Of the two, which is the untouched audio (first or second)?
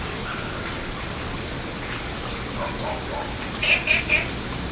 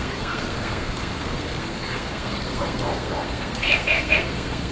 first